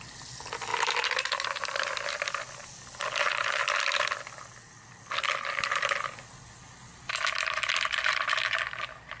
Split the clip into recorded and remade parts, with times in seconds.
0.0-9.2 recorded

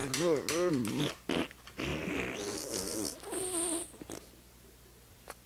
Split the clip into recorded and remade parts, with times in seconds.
0.0-5.5 recorded

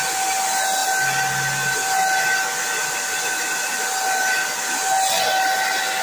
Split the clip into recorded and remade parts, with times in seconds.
0.0-6.0 recorded